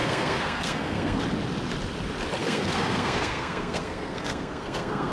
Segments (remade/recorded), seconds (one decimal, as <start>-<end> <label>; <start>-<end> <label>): 0.0-1.2 remade; 1.2-2.4 recorded; 2.4-5.1 remade

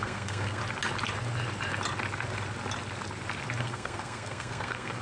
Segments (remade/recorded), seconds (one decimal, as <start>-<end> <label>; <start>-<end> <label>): 0.0-0.6 remade; 0.6-3.6 recorded; 3.6-5.0 remade

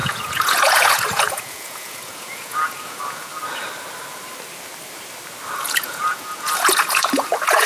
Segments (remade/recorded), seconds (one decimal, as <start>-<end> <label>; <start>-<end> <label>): 0.0-3.3 remade; 3.3-5.6 recorded; 5.6-7.7 remade